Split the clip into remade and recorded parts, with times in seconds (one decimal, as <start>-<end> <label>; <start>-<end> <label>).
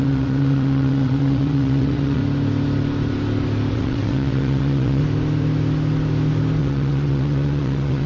0.0-2.2 remade; 2.2-3.7 recorded; 3.7-5.0 remade; 5.0-6.6 recorded; 6.6-8.1 remade